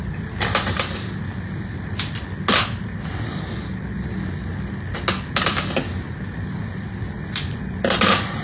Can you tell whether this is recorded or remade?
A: recorded